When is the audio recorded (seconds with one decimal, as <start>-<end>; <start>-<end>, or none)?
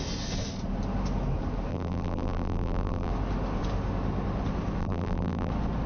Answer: 0.0-1.7; 3.1-4.8; 5.5-5.9